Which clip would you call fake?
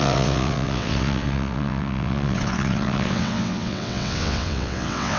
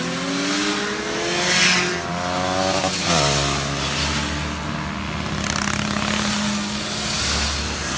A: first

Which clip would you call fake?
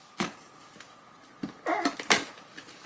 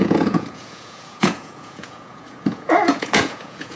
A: second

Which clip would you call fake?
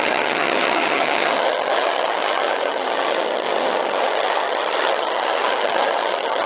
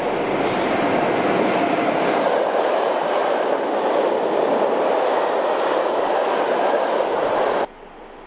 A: first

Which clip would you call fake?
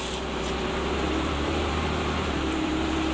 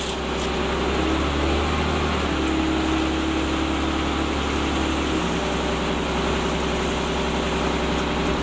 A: first